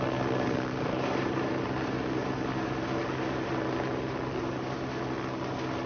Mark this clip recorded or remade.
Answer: recorded